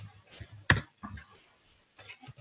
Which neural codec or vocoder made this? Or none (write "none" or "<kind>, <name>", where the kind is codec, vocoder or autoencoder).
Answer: none